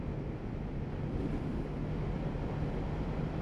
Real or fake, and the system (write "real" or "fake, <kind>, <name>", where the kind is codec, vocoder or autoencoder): real